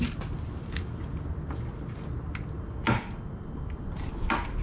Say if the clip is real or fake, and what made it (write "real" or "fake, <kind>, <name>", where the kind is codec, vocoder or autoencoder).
real